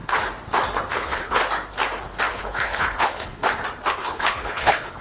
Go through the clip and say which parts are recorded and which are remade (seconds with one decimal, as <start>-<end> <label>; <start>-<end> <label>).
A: 0.0-0.9 recorded; 0.9-1.4 remade; 1.4-2.3 recorded; 2.3-3.4 remade; 3.4-3.9 recorded; 3.9-5.0 remade